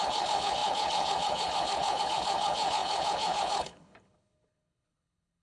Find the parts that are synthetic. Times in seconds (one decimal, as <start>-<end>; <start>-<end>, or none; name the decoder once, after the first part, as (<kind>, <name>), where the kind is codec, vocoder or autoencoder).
0.0-5.4 (codec, HILCodec)